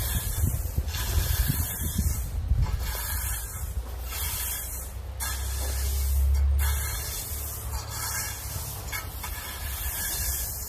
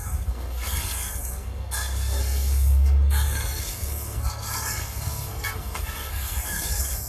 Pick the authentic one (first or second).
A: first